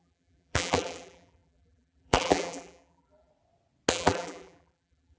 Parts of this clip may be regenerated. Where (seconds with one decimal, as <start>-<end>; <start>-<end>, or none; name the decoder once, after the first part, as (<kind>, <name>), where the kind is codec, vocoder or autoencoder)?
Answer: 0.0-3.3 (vocoder, BigVGAN v2); 3.9-5.2